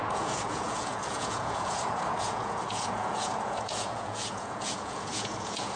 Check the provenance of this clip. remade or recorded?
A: remade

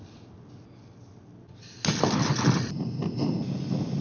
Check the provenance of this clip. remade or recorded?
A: recorded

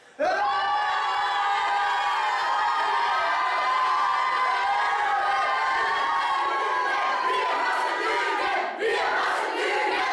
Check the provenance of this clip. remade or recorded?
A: recorded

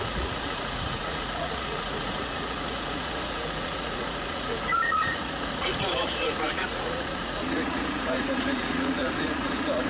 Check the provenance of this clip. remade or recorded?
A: remade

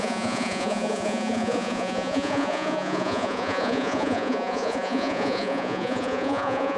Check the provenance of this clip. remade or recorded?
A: remade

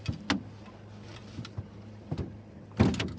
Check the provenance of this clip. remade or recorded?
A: recorded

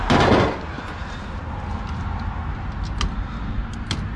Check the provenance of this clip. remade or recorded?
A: recorded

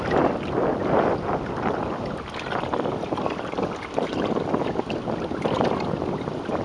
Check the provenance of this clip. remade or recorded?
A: recorded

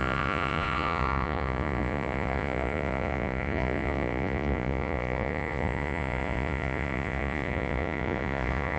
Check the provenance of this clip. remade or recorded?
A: remade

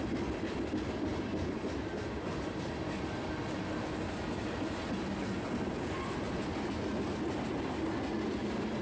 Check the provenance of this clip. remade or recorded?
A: recorded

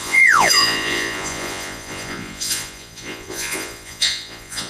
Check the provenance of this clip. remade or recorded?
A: remade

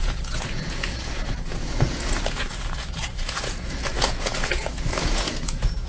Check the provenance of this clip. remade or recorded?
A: remade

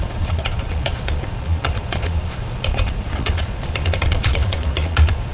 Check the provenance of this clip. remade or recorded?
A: remade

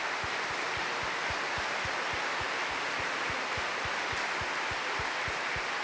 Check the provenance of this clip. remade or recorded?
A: recorded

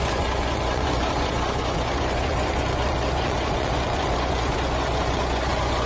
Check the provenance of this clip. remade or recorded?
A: remade